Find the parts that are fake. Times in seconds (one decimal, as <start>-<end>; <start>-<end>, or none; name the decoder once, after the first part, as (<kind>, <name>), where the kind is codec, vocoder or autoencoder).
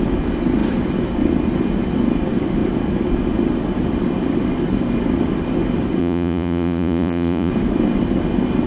6.0-7.5 (vocoder, Vocos)